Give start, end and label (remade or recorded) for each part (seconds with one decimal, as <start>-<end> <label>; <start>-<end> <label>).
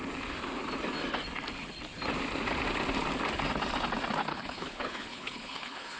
0.0-4.3 recorded; 4.3-6.0 remade